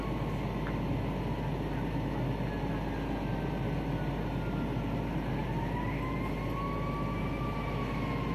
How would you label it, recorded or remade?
recorded